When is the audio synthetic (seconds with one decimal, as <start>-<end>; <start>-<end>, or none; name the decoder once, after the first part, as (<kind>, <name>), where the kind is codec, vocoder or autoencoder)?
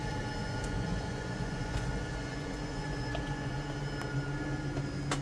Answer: 0.4-3.5 (vocoder, Vocos)